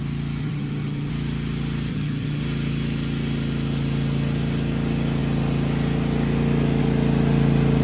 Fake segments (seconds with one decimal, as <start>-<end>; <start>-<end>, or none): 0.4-1.1; 1.9-2.4